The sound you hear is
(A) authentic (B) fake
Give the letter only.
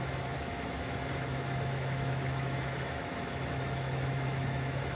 B